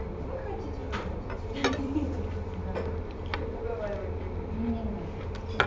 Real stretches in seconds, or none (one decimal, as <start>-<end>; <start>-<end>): 0.0-5.7